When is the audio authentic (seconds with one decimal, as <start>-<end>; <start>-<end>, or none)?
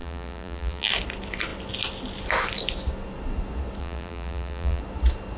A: 0.9-3.8; 4.8-5.4